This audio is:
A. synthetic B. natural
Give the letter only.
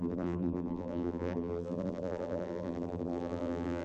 A